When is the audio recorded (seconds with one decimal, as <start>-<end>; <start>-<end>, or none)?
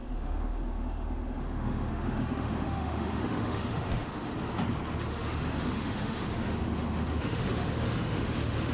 4.3-5.1